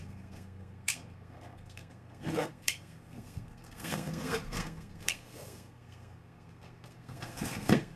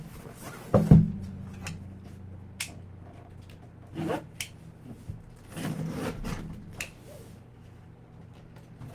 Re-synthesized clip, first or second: first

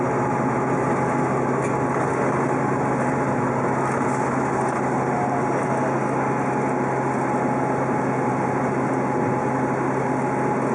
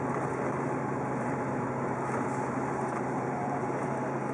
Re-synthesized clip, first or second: second